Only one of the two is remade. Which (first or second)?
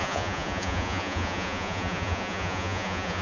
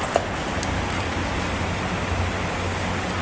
first